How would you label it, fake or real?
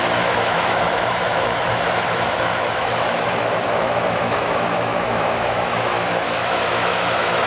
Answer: fake